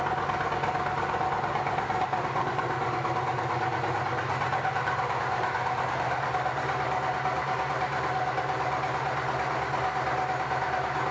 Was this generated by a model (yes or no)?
no